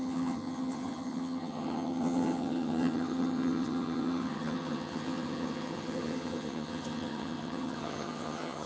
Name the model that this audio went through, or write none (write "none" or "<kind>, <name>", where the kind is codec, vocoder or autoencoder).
vocoder, HiFi-GAN